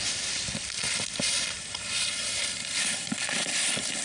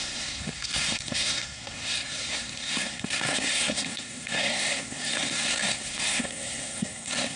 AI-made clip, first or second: second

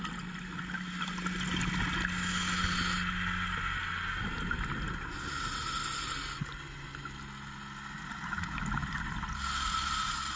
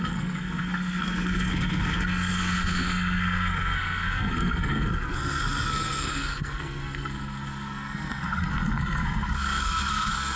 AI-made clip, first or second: second